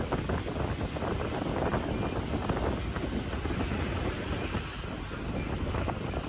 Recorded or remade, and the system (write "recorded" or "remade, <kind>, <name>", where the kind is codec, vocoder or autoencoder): recorded